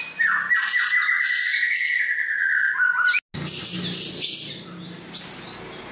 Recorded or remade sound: recorded